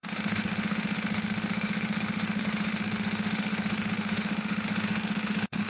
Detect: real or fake fake